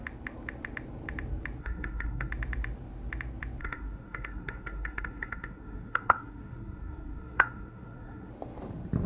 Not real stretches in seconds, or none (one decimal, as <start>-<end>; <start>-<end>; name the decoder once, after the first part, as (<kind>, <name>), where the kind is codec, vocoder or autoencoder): 1.6-2.3 (codec, SNAC); 3.6-8.3